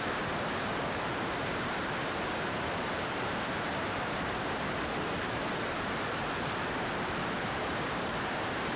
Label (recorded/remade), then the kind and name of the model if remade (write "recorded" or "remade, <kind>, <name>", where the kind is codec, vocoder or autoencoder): remade, vocoder, BigVGAN v2